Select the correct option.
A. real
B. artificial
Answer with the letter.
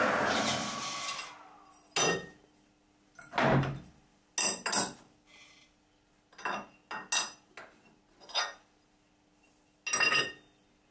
A